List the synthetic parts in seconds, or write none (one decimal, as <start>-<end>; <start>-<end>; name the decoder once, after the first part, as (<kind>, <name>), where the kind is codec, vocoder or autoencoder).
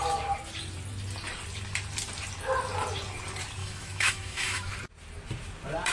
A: 3.6-4.7 (autoencoder, DAC-VAE)